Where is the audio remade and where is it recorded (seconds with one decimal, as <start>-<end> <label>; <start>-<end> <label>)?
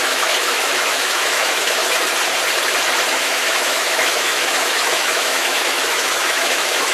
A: 0.0-1.8 remade; 1.8-3.1 recorded; 3.1-6.9 remade